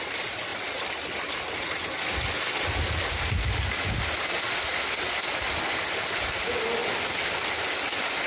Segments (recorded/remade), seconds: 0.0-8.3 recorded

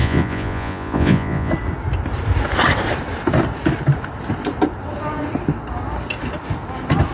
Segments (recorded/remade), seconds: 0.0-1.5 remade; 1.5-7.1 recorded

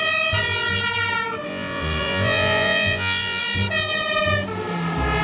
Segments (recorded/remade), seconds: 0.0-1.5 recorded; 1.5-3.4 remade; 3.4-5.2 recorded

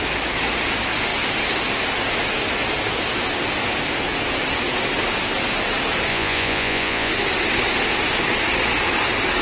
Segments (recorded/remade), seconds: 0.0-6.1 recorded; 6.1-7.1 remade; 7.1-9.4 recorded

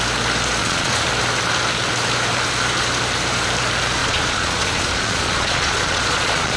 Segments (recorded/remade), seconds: 0.0-0.6 recorded; 0.6-1.1 remade; 1.1-4.0 recorded; 4.0-6.6 remade

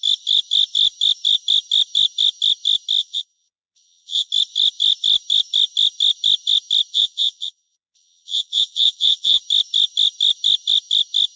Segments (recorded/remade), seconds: 0.0-3.0 recorded; 3.0-4.3 remade; 4.3-6.9 recorded; 6.9-9.4 remade; 9.4-11.4 recorded

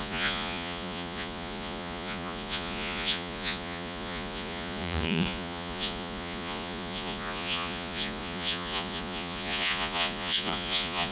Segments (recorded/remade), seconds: 0.0-11.1 remade

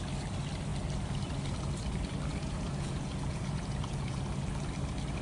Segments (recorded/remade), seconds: 0.0-2.3 recorded; 2.3-4.2 remade; 4.2-5.2 recorded